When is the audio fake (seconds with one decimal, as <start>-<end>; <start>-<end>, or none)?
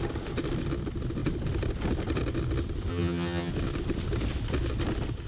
2.9-3.5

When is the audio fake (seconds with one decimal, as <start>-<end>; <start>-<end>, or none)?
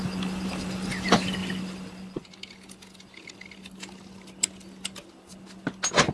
none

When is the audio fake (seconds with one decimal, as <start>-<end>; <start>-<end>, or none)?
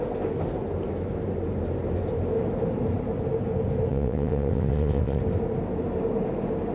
3.9-5.2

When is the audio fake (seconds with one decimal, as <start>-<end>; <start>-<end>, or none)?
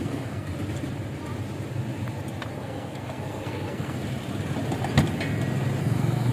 0.0-0.5; 2.5-4.0; 5.8-6.3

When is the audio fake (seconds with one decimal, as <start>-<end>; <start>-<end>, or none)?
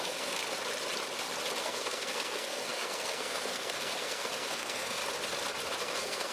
0.0-0.4; 1.6-5.0; 5.8-6.3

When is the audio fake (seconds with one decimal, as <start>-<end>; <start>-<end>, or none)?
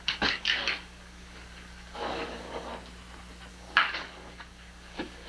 0.0-2.7; 3.5-5.3